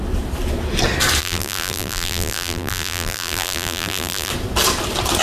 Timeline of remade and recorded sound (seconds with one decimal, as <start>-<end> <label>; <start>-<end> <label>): 0.0-1.2 recorded; 1.2-4.3 remade; 4.3-5.2 recorded